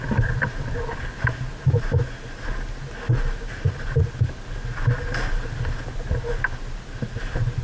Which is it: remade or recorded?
recorded